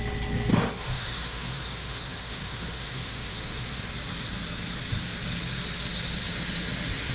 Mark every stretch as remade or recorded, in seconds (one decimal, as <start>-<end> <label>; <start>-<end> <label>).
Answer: 0.0-0.5 recorded; 0.5-3.9 remade; 3.9-7.1 recorded